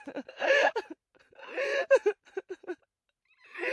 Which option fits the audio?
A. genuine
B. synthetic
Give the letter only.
B